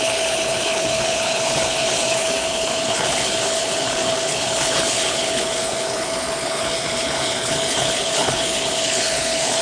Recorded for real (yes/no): no